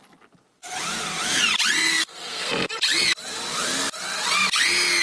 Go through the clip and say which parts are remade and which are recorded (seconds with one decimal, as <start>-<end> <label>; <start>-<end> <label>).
0.0-1.9 recorded; 1.9-2.5 remade; 2.5-5.0 recorded